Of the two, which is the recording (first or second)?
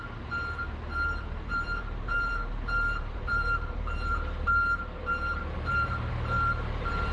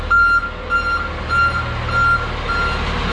second